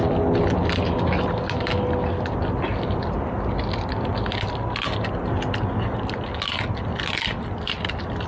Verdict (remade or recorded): recorded